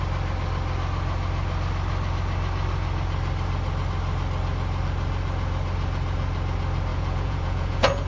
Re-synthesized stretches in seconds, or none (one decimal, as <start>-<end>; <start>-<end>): 6.9-8.1